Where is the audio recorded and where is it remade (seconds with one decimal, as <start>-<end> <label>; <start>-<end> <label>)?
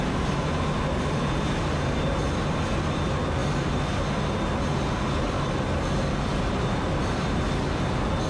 0.0-8.3 recorded